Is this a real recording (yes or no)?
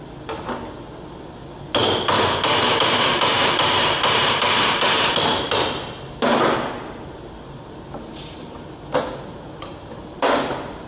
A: yes